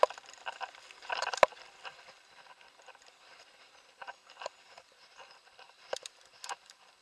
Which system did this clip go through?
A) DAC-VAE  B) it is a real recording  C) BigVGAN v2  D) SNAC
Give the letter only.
C